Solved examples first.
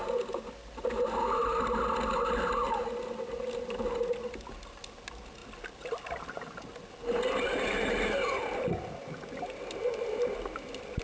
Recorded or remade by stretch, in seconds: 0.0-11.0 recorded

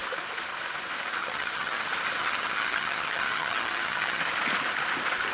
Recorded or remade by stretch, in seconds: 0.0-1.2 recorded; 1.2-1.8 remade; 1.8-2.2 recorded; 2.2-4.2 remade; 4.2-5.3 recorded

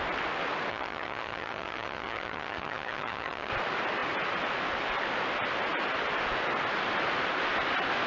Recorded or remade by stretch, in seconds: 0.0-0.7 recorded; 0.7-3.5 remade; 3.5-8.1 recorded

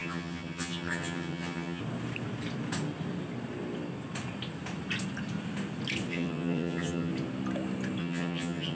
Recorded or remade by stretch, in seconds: 0.0-1.8 remade; 1.8-6.1 recorded; 6.1-7.1 remade; 7.1-8.0 recorded; 8.0-8.8 remade

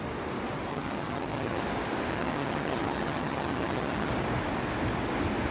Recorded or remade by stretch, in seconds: 0.0-0.7 recorded; 0.7-1.6 remade; 1.6-2.1 recorded; 2.1-4.1 remade; 4.1-5.5 recorded

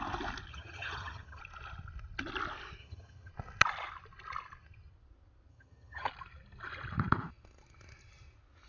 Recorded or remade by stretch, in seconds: 0.0-0.5 recorded; 0.5-1.4 remade; 1.4-2.8 recorded; 2.8-3.3 remade; 3.3-5.5 recorded; 5.5-6.1 remade; 6.1-8.7 recorded

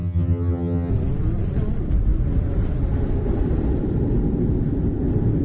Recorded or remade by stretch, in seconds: 0.0-0.9 remade; 0.9-5.4 recorded

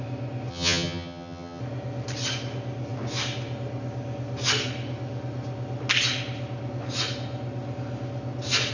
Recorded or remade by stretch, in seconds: 0.0-0.5 recorded; 0.5-1.6 remade; 1.6-8.7 recorded